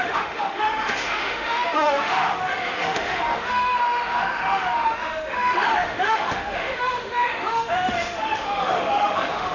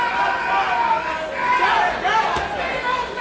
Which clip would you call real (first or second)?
second